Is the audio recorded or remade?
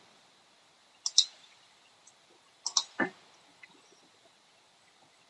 recorded